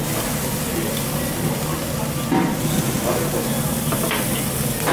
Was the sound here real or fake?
real